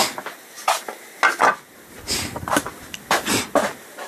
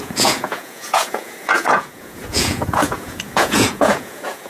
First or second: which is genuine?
first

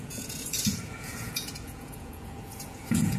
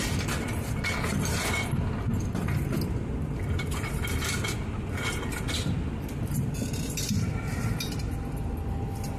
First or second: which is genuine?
second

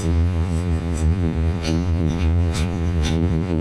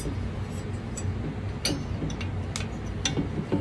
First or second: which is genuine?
second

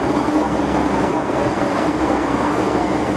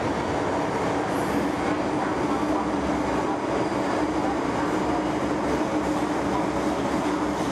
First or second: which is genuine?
second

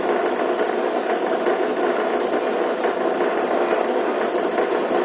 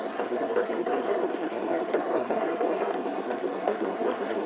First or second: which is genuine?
first